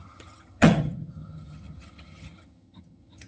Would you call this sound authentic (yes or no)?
no